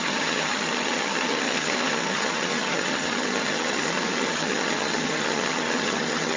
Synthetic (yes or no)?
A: yes